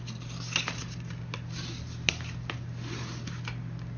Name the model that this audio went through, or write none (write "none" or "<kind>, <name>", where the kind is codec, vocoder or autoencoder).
none